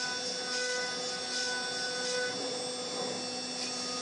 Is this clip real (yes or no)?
yes